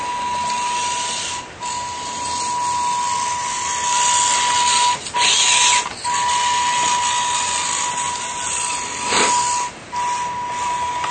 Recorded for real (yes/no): yes